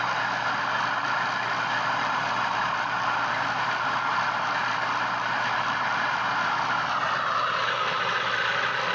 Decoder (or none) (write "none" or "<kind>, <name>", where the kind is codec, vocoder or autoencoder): none